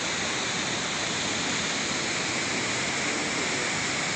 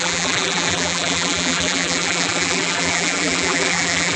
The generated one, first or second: second